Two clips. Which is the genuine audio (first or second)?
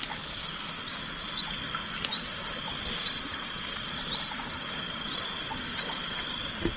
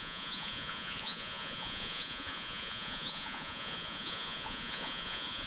first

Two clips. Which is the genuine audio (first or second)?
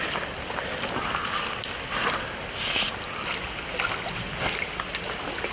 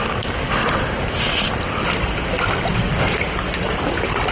first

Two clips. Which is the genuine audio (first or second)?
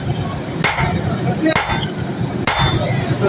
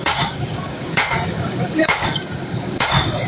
first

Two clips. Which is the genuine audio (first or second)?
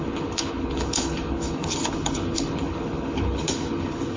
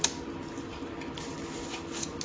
second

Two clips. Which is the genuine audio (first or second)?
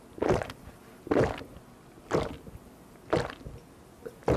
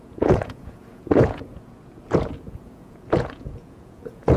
first